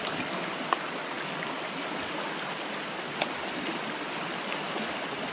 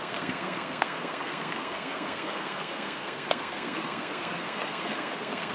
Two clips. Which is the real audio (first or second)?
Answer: first